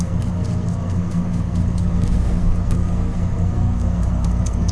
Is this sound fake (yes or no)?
yes